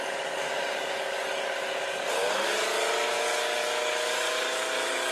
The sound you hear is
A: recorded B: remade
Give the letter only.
B